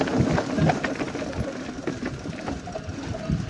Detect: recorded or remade recorded